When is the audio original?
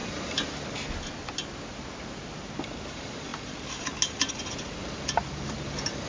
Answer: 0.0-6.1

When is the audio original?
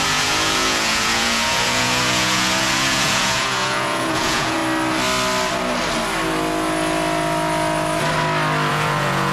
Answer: 4.6-8.7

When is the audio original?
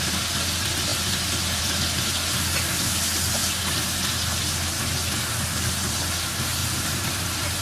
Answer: 0.0-6.6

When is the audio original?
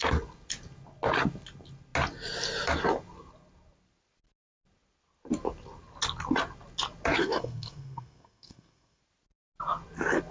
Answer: 0.0-7.2; 9.0-10.3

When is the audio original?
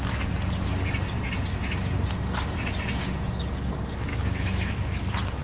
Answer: 0.0-4.1; 5.0-5.4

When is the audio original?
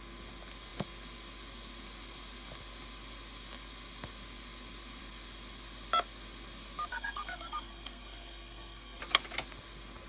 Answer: 0.0-6.9; 9.0-10.1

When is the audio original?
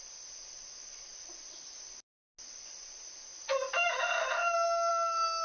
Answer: 0.0-5.4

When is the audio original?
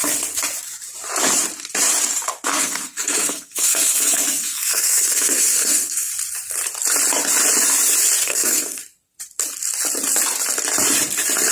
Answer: 0.0-2.5; 6.1-8.2; 8.8-11.5